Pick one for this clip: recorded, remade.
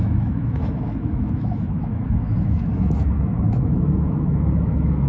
remade